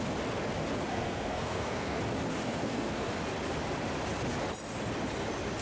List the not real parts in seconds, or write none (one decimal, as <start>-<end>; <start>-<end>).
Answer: 0.9-2.0; 2.4-3.1